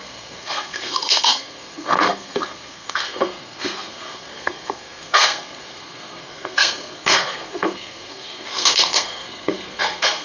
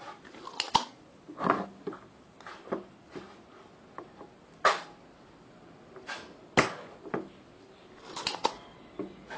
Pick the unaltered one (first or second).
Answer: second